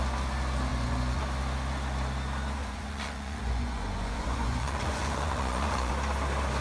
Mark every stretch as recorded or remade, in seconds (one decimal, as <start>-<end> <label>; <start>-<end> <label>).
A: 0.0-0.7 recorded; 0.7-1.2 remade; 1.2-2.6 recorded; 2.6-5.9 remade; 5.9-6.6 recorded